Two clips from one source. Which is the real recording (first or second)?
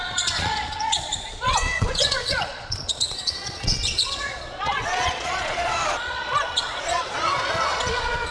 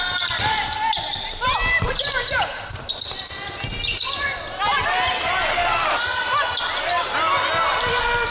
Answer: second